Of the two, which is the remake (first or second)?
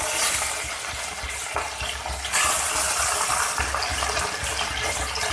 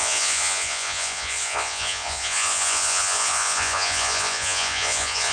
second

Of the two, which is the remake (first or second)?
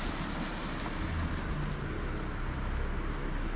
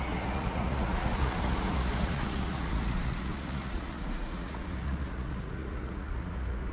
second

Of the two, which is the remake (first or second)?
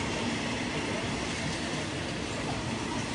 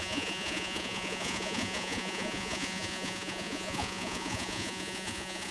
second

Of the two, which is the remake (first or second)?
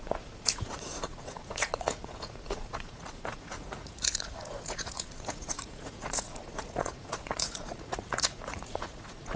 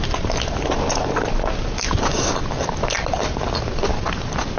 first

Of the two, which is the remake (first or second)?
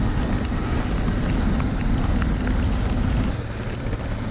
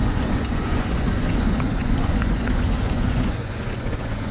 second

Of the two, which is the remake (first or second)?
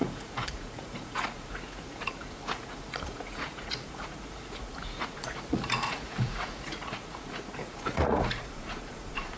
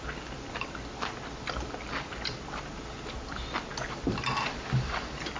first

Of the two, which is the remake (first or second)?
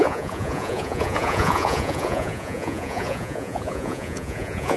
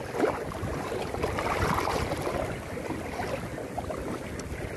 first